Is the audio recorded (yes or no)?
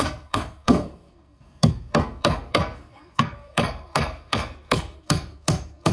no